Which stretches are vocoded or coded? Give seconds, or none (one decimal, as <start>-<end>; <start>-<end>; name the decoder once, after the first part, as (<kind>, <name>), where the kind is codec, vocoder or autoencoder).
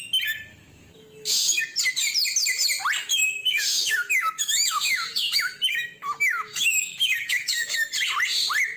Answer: 0.5-1.6 (autoencoder, DAC-VAE); 3.0-7.9